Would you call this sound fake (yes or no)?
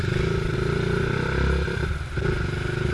no